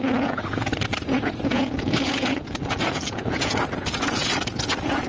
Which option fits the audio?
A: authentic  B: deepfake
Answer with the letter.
B